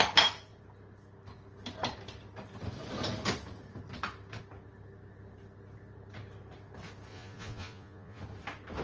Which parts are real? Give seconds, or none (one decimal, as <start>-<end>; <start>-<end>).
0.0-7.1; 8.2-8.8

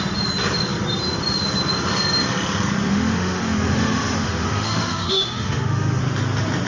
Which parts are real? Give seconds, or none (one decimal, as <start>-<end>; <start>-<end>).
0.0-2.9; 6.0-6.7

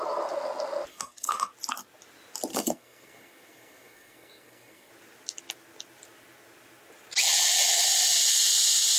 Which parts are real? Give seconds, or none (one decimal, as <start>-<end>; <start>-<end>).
0.0-0.9; 1.5-2.5; 4.9-9.0

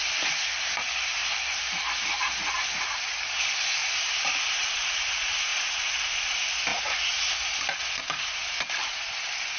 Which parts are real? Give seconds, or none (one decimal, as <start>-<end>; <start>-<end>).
0.0-1.2; 1.8-3.8; 4.9-6.7; 7.3-9.6

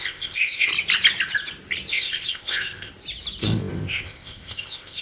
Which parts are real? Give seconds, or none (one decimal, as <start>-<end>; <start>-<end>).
0.7-1.9; 2.9-3.4

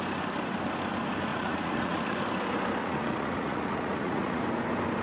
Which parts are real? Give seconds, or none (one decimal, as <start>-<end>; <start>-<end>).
0.0-1.3; 2.2-2.8; 4.4-5.0